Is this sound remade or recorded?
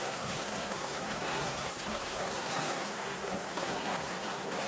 remade